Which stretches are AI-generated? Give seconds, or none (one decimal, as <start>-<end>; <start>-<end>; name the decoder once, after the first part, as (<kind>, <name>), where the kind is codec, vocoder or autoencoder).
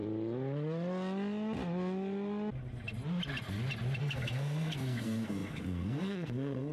4.0-6.7 (codec, SNAC)